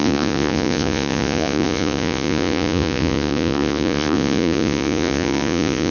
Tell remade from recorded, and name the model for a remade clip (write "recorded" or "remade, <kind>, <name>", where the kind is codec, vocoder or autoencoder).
remade, vocoder, Vocos